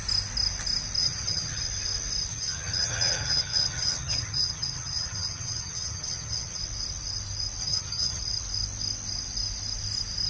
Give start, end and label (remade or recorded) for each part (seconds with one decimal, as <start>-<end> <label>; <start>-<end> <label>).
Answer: 0.0-1.0 recorded; 1.0-1.6 remade; 1.6-2.3 recorded; 2.3-6.6 remade; 6.6-7.6 recorded; 7.6-8.2 remade; 8.2-10.3 recorded